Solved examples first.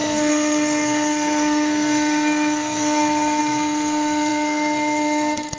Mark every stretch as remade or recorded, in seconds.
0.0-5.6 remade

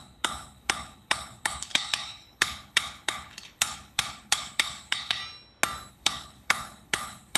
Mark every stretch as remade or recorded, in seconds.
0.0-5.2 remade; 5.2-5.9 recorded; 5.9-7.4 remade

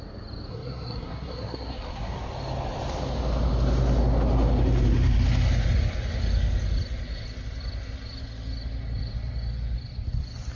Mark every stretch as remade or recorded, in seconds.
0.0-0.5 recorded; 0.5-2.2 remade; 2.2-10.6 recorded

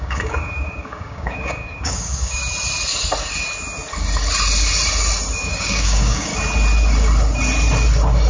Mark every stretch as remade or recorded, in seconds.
0.0-2.4 remade; 2.4-5.5 recorded; 5.5-6.3 remade; 6.3-8.3 recorded

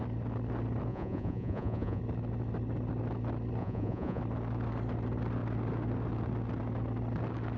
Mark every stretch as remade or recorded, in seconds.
0.0-0.9 recorded; 0.9-2.0 remade; 2.0-3.6 recorded; 3.6-4.2 remade; 4.2-7.6 recorded

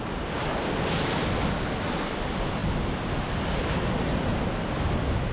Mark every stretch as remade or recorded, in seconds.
0.0-5.3 recorded